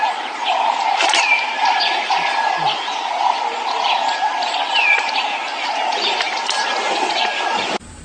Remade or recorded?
remade